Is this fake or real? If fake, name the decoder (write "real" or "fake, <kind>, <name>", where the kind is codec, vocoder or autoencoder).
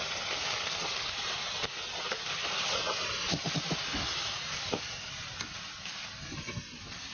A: real